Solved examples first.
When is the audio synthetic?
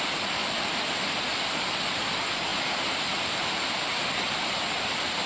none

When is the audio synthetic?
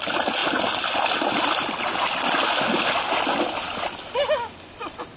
none